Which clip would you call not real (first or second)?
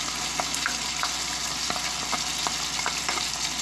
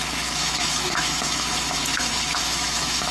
second